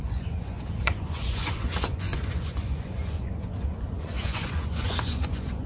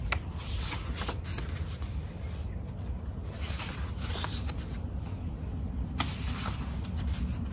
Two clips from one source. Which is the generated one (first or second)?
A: first